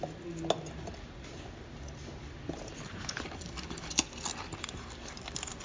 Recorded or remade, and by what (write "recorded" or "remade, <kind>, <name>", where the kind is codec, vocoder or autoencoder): recorded